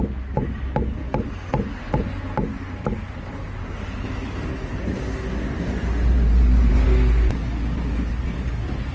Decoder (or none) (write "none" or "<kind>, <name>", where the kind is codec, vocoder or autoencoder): none